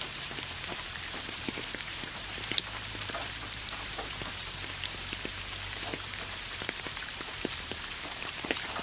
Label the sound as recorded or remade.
remade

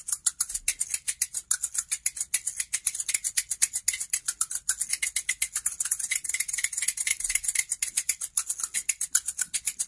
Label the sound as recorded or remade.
recorded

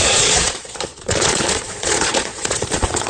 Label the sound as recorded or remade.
remade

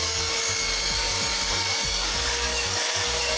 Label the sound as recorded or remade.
remade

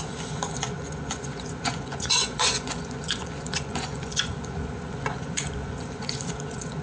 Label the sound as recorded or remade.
remade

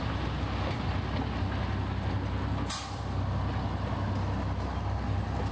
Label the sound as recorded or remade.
recorded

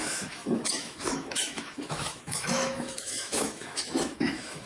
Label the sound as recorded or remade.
remade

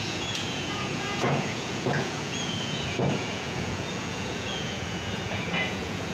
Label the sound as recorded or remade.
remade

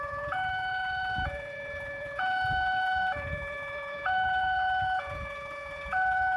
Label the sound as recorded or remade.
remade